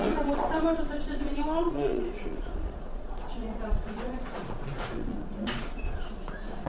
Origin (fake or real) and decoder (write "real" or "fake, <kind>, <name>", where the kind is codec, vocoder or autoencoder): fake, vocoder, Vocos